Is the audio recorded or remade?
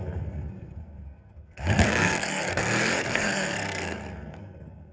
remade